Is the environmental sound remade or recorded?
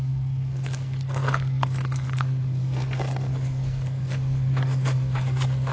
remade